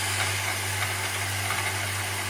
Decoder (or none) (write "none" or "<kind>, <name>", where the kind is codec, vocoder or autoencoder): none